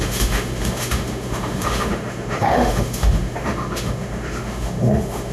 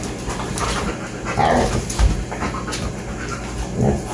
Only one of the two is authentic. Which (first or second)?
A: second